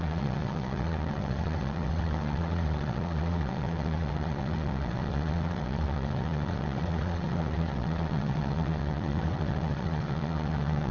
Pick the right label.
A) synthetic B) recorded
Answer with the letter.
A